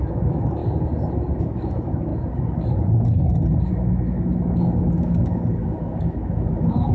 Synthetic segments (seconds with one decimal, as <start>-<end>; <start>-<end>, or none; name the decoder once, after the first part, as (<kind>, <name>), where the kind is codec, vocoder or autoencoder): 0.0-0.6 (autoencoder, DAC-VAE); 1.4-2.1; 3.7-6.9

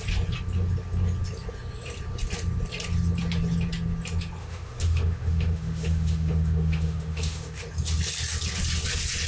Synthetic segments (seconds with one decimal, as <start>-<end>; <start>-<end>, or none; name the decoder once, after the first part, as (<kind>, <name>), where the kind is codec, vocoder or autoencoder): 4.4-7.6 (autoencoder, DAC-VAE)

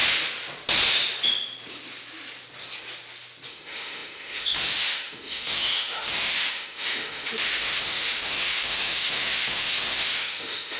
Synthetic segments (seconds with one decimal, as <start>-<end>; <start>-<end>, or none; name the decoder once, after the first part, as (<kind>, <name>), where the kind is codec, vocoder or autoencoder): 3.5-10.8 (autoencoder, DAC-VAE)

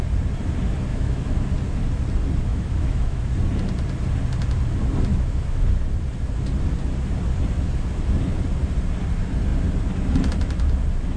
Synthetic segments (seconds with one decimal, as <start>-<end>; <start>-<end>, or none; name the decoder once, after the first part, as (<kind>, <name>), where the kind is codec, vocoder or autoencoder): 0.9-1.5 (autoencoder, DAC-VAE); 2.5-3.2; 5.1-5.6

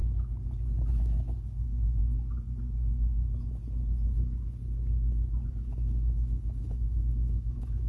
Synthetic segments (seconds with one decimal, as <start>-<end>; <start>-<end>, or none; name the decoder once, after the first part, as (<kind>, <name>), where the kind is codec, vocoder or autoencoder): 0.9-2.0 (autoencoder, DAC-VAE); 5.5-7.9